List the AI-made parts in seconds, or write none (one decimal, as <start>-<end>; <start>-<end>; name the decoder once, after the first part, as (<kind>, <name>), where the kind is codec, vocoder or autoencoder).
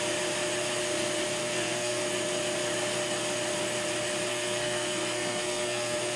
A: 1.4-2.0 (codec, SNAC); 4.3-6.2